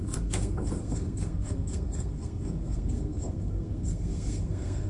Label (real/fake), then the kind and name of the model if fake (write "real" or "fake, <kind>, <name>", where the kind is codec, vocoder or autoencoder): fake, codec, SNAC